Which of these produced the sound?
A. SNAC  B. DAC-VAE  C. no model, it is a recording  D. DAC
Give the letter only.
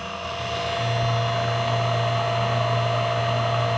C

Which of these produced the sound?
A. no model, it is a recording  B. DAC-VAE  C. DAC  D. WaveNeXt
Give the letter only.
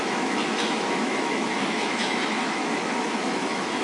B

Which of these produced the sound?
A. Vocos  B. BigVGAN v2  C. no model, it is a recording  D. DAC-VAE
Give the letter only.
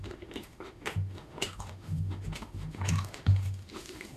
D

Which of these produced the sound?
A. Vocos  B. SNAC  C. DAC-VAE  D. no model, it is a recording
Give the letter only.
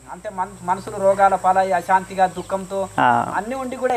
D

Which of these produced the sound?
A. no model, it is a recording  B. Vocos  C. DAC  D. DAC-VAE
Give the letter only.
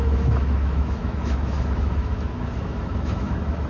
D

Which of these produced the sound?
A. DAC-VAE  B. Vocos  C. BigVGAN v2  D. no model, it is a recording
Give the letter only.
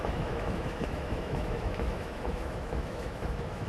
A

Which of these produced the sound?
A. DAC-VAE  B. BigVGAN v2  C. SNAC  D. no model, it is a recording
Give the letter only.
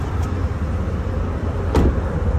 D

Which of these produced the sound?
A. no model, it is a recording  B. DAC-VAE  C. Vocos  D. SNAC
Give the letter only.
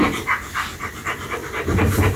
A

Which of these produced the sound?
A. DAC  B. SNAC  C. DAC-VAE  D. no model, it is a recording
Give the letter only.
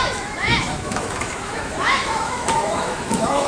C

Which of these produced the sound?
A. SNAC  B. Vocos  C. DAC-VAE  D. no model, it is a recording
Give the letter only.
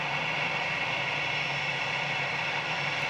D